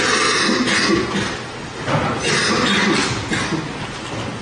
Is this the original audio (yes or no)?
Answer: yes